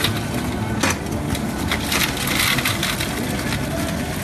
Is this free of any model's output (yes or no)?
yes